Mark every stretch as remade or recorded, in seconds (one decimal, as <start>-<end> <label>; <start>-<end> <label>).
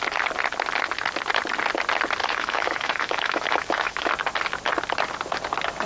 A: 0.0-2.2 recorded; 2.2-4.1 remade; 4.1-5.9 recorded